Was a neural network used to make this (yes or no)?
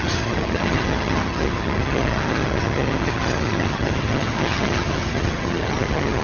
yes